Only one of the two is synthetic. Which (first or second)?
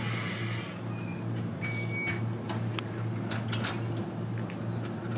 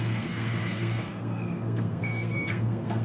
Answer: second